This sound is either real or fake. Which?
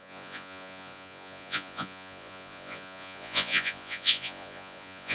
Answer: fake